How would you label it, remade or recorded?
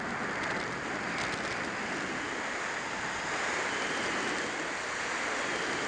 recorded